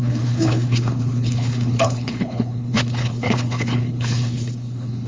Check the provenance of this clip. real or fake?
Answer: fake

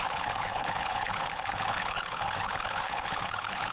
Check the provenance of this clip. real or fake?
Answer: fake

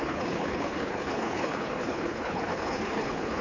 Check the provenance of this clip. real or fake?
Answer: fake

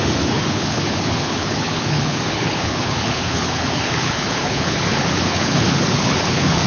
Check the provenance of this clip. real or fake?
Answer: fake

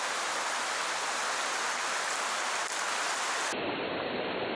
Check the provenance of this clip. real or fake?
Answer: real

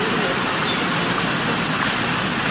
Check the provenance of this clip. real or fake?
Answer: real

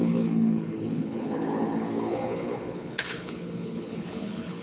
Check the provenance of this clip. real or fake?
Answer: fake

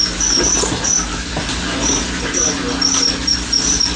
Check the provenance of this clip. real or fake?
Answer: real